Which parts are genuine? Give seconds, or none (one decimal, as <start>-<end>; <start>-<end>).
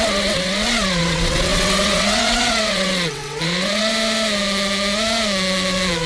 3.9-6.1